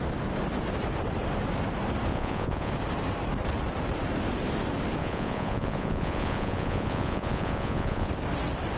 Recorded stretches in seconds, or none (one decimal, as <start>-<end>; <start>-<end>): 0.0-2.1; 2.7-5.0; 8.1-8.8